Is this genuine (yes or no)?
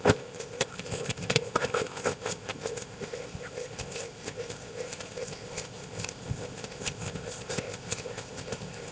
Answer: no